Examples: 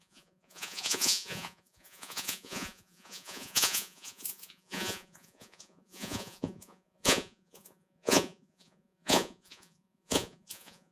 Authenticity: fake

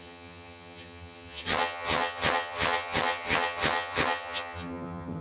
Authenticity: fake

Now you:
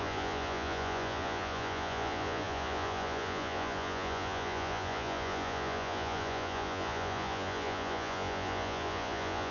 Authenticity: fake